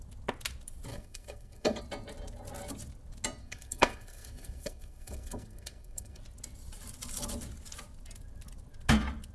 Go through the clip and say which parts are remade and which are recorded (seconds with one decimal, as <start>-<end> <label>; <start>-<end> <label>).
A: 0.0-0.9 recorded; 0.9-1.8 remade; 1.8-3.4 recorded; 3.4-6.2 remade; 6.2-9.3 recorded